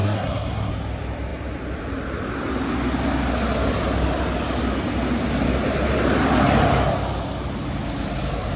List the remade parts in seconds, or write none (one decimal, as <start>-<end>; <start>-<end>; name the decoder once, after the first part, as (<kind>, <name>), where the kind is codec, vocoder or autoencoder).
0.0-0.7 (codec, SNAC)